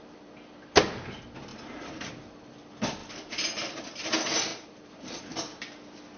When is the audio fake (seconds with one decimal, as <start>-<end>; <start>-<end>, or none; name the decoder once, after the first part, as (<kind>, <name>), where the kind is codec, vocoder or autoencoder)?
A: 1.5-2.1 (vocoder, BigVGAN v2); 4.5-5.2